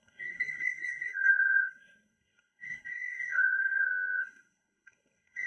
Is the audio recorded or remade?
remade